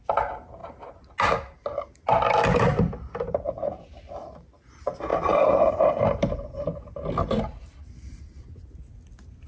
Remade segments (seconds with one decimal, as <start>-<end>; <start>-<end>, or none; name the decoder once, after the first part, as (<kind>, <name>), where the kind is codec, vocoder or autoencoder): 2.7-3.5 (vocoder, BigVGAN v2); 5.1-6.0